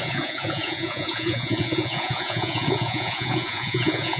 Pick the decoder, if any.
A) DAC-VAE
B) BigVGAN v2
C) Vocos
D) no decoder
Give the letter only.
C